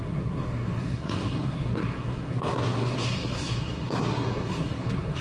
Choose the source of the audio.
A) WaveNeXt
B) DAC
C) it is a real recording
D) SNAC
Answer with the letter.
D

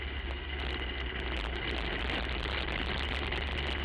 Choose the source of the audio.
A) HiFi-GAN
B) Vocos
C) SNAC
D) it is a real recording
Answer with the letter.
D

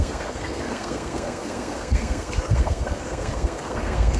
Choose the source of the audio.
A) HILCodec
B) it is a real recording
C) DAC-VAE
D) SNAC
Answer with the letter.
D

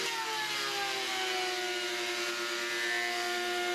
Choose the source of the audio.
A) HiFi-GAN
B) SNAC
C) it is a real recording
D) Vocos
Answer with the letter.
C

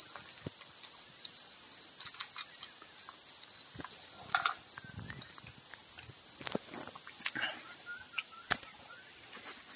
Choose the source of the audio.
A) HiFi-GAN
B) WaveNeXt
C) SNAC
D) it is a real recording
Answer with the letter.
D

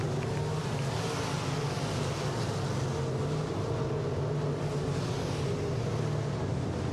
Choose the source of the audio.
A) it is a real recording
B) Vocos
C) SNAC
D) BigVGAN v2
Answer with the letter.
A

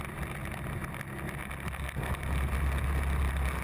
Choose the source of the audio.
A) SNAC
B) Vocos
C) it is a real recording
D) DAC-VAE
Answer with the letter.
C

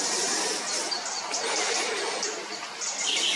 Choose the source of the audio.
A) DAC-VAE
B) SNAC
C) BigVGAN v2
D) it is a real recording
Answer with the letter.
D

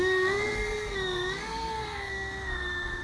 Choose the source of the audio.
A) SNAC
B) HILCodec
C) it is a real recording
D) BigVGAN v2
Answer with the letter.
A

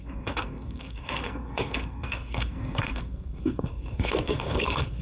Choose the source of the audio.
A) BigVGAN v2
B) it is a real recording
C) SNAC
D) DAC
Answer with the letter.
C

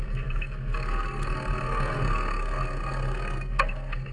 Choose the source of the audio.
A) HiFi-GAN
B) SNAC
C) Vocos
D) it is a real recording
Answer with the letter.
B